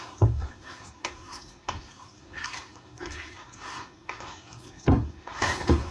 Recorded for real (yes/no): no